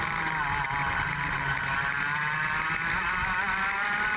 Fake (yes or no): no